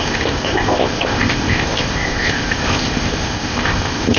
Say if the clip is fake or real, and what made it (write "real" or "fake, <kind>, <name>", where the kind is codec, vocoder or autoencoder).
fake, codec, ZipCodec